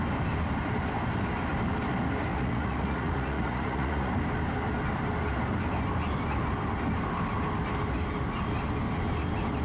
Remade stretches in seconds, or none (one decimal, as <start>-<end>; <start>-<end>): 2.3-4.2